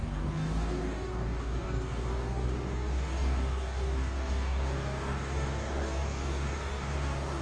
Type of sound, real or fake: fake